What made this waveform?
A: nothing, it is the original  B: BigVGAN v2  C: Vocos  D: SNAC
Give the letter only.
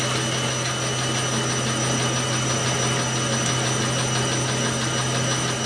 A